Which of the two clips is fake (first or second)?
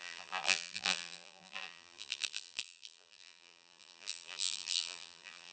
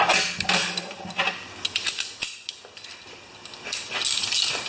first